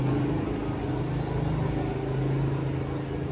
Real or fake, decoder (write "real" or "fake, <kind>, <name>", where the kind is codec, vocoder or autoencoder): real